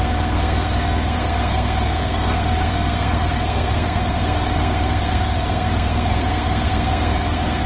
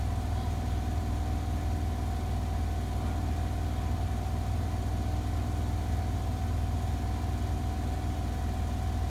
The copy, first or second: first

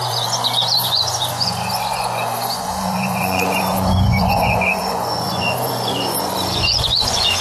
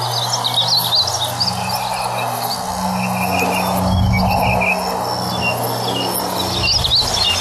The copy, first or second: first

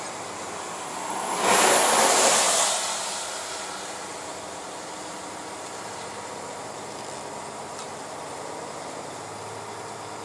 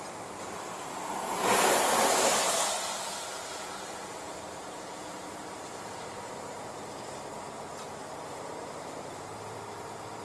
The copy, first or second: second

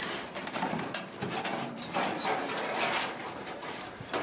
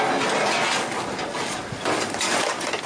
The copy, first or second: first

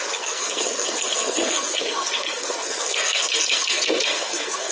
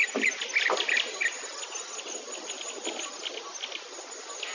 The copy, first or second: first